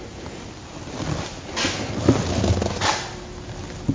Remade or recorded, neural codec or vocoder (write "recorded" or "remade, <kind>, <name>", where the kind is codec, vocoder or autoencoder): recorded